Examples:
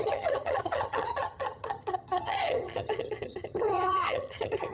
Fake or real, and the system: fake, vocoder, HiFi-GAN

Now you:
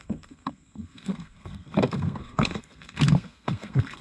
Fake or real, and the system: fake, codec, SNAC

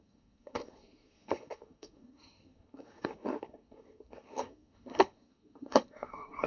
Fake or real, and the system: fake, codec, SNAC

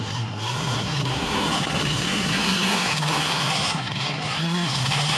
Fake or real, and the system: fake, codec, SNAC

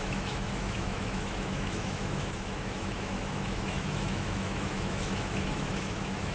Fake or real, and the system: fake, autoencoder, DAC-VAE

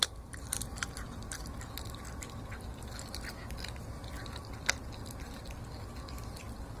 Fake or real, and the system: real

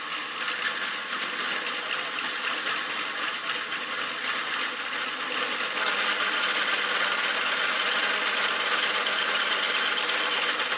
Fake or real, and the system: real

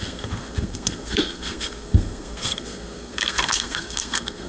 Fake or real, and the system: fake, codec, SNAC